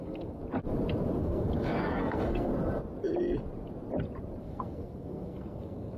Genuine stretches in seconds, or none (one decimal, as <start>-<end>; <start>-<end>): 0.4-1.2; 2.5-4.4